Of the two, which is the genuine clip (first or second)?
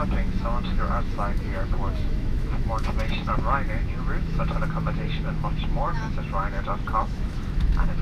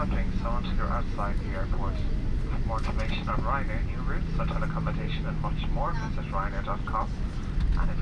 second